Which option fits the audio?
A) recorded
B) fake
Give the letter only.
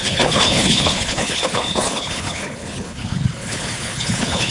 B